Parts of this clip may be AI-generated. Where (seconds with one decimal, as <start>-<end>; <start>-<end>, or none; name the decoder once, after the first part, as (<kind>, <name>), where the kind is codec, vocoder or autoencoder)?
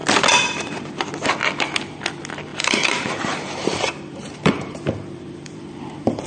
2.5-6.3 (vocoder, BigVGAN v2)